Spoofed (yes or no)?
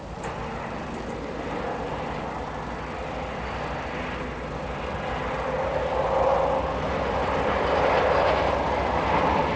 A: no